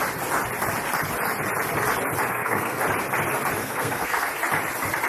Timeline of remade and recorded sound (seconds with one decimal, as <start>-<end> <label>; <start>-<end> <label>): 0.0-2.3 recorded; 2.3-2.8 remade; 2.8-3.6 recorded; 3.6-4.3 remade; 4.3-5.1 recorded